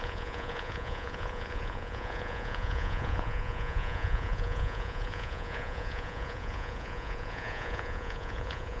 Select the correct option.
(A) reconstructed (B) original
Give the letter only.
A